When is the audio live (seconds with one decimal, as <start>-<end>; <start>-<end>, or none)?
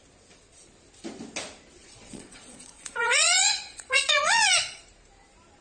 0.0-1.8; 4.8-5.6